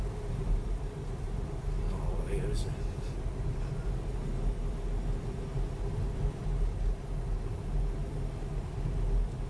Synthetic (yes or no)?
no